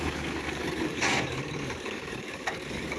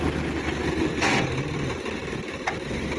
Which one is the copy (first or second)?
first